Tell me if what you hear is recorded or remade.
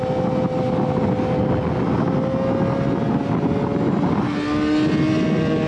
recorded